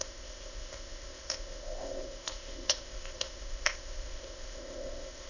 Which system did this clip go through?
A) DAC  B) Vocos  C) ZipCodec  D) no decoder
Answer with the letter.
C